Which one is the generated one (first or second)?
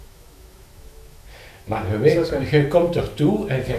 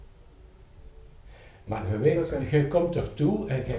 first